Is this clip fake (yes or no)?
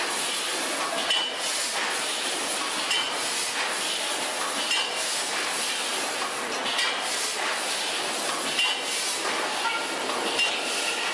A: no